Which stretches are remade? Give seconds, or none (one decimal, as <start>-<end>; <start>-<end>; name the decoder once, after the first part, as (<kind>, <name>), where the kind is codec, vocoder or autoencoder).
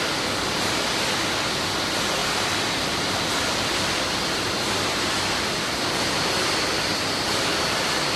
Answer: 2.2-3.4 (vocoder, BigVGAN v2)